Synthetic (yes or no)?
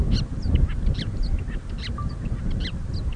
no